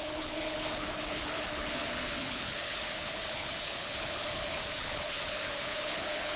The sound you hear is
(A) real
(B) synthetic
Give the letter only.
B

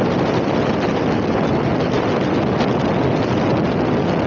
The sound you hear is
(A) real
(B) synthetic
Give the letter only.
A